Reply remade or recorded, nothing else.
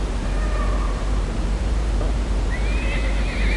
remade